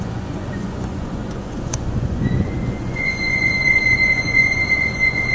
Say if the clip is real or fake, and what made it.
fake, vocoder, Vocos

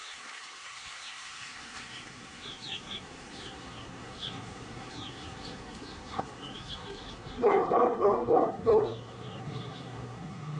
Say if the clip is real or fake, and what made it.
fake, codec, SNAC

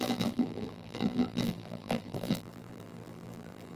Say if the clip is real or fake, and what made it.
fake, vocoder, BigVGAN v2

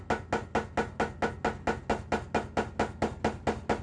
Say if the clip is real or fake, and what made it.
real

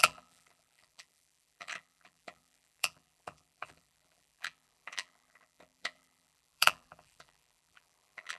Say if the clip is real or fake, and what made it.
fake, vocoder, BigVGAN v2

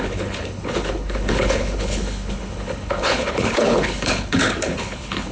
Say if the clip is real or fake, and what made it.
fake, codec, HILCodec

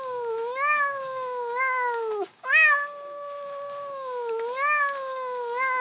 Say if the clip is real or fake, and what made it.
fake, codec, DAC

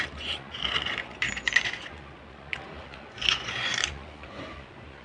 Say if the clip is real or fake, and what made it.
fake, vocoder, Vocos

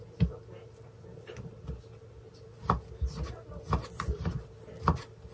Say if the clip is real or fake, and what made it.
real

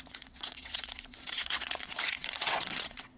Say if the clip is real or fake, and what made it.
fake, vocoder, WaveNeXt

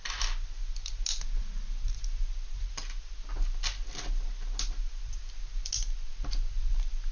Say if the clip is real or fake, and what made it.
real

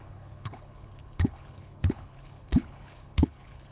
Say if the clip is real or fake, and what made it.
fake, codec, HILCodec